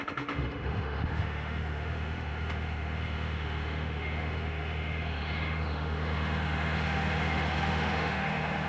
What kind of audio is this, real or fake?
fake